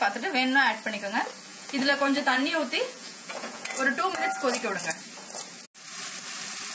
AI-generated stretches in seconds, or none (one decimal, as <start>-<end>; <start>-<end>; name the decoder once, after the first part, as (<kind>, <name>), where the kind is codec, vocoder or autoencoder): 1.5-3.7 (vocoder, Vocos)